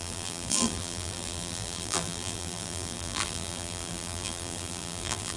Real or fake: fake